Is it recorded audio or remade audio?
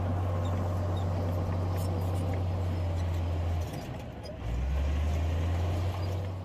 recorded